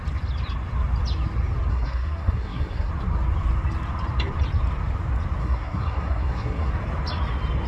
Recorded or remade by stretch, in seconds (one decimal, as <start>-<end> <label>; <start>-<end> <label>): 0.0-1.7 recorded; 1.7-2.9 remade; 2.9-5.4 recorded; 5.4-6.7 remade; 6.7-7.7 recorded

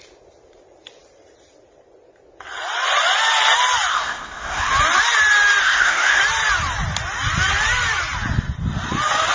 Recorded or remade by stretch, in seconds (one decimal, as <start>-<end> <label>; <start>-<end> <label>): 0.0-3.9 recorded; 3.9-4.7 remade; 4.7-5.6 recorded; 5.6-6.2 remade; 6.2-9.3 recorded

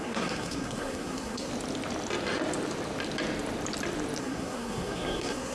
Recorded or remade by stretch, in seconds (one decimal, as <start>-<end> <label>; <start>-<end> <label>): 0.0-1.5 remade; 1.5-4.2 recorded; 4.2-5.5 remade